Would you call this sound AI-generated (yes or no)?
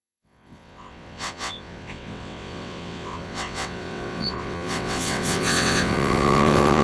yes